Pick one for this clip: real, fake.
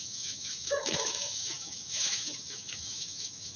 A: fake